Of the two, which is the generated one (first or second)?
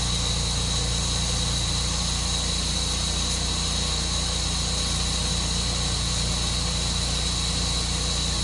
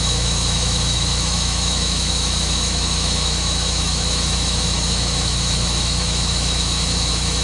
second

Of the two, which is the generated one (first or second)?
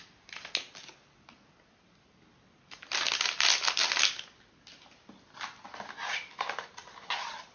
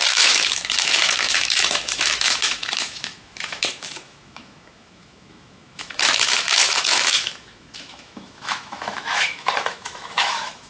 second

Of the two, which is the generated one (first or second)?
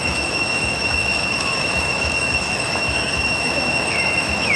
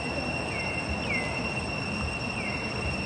first